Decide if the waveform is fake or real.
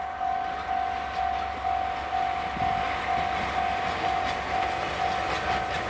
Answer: real